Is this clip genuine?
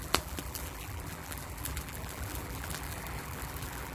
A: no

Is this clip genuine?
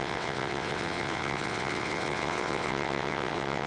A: no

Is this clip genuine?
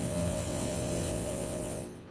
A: no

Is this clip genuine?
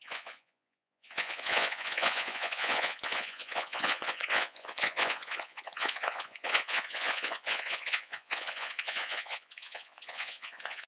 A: no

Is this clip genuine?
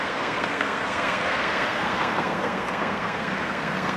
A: no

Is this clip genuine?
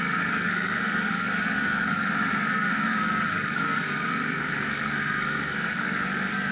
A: no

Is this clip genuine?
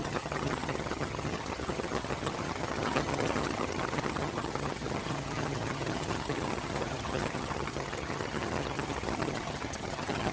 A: no